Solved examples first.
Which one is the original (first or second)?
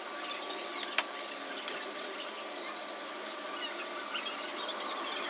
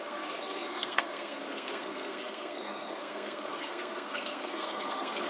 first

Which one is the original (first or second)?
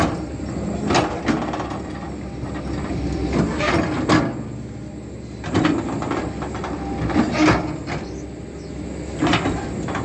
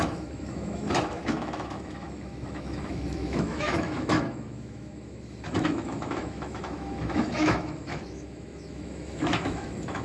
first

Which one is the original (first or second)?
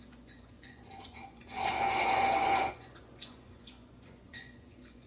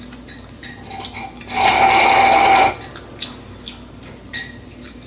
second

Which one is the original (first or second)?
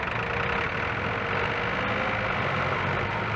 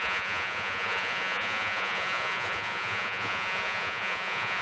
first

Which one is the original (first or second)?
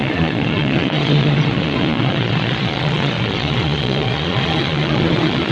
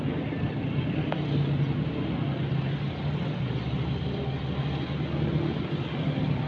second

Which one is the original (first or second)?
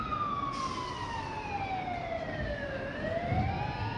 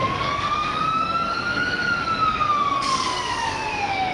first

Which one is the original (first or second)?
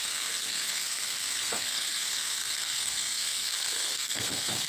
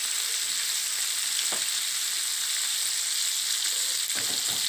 second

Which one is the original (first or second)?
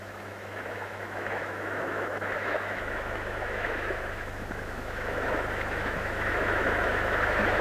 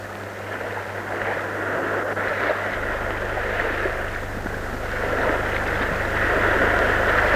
second